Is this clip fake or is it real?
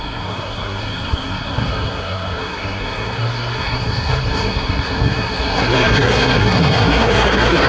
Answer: fake